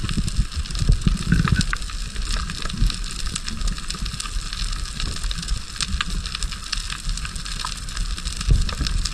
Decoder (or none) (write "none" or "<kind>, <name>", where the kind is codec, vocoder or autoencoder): none